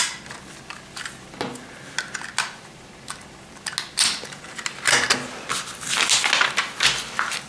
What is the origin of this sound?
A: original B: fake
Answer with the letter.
A